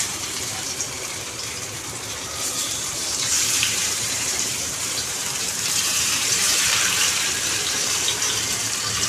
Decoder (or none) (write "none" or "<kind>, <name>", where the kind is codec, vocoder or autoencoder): vocoder, BigVGAN v2